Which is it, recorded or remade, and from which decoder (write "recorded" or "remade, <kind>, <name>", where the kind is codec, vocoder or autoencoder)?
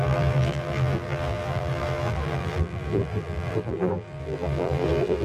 remade, vocoder, BigVGAN v2